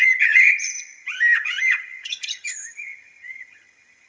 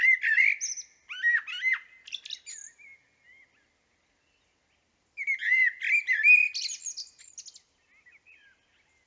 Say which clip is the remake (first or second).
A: first